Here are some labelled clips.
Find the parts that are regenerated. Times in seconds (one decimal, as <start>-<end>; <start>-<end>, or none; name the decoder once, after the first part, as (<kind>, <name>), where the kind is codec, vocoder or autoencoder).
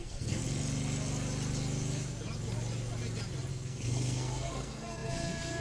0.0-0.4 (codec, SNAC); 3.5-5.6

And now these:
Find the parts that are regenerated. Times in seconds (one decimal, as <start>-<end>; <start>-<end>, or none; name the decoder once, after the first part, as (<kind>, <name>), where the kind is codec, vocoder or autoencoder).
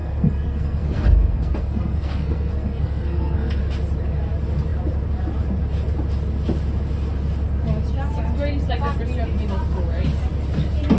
0.0-3.6 (codec, SNAC)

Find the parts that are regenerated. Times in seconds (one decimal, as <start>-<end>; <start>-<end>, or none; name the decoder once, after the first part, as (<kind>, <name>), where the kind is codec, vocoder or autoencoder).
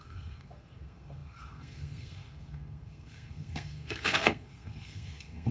0.0-5.5 (codec, SNAC)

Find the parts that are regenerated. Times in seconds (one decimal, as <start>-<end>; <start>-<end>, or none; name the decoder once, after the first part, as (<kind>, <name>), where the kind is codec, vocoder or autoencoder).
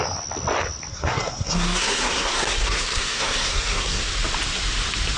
0.9-4.0 (codec, SNAC)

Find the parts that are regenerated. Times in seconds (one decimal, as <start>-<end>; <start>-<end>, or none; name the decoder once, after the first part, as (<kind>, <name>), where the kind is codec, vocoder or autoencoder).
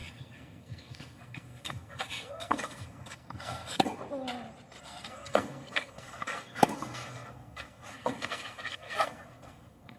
0.0-4.0 (codec, SNAC); 4.8-10.0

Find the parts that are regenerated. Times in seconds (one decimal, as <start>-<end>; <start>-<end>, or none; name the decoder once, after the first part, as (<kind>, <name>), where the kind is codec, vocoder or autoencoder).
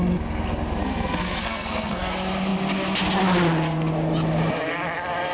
0.8-2.1 (codec, SNAC)